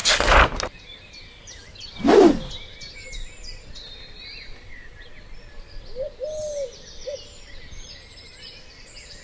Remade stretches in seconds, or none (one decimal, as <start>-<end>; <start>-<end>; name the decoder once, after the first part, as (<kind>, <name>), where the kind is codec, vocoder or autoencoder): none